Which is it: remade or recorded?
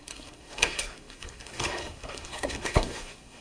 remade